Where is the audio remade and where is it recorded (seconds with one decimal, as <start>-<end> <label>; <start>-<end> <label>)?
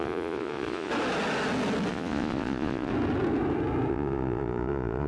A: 0.0-0.9 remade; 0.9-1.9 recorded; 1.9-2.9 remade; 2.9-3.9 recorded; 3.9-5.1 remade